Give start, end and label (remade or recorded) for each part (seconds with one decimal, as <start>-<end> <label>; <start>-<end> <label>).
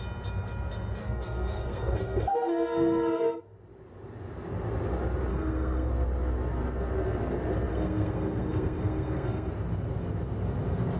0.0-1.0 recorded; 1.0-3.4 remade; 3.4-5.3 recorded; 5.3-5.9 remade; 5.9-7.7 recorded; 7.7-9.5 remade; 9.5-11.0 recorded